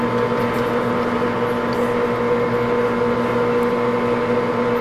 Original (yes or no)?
yes